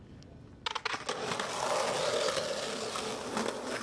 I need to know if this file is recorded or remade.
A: recorded